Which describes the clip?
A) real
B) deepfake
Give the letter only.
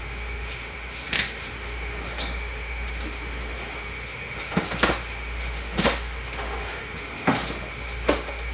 B